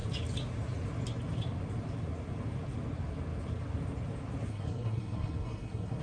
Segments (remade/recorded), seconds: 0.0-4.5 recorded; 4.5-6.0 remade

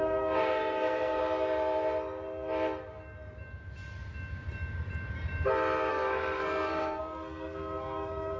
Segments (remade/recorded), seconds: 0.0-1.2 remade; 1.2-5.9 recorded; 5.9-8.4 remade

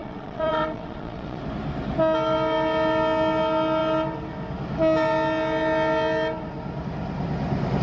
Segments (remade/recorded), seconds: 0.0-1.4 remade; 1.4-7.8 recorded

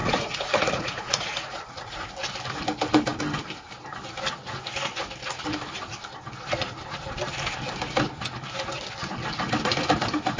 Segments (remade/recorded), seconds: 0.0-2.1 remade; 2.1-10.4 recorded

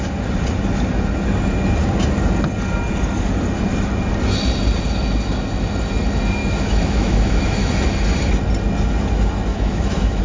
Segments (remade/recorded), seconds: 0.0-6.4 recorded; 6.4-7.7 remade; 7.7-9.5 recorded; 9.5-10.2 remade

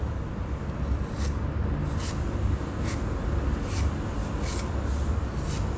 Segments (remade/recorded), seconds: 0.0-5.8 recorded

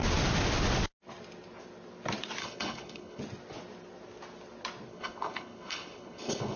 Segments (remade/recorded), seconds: 0.0-2.4 recorded; 2.4-3.2 remade; 3.2-4.9 recorded; 4.9-6.6 remade

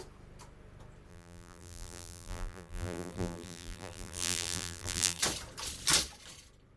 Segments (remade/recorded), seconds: 0.0-1.1 recorded; 1.1-5.2 remade; 5.2-6.8 recorded